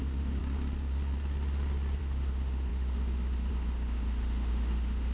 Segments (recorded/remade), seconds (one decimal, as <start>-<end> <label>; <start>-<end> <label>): 0.0-0.4 remade; 0.4-2.0 recorded; 2.0-5.1 remade